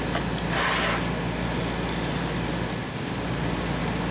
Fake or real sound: real